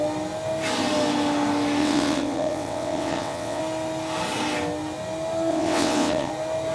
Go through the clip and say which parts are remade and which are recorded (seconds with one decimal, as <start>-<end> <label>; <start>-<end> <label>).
0.0-1.8 recorded; 1.8-3.6 remade; 3.6-5.5 recorded; 5.5-6.3 remade; 6.3-6.7 recorded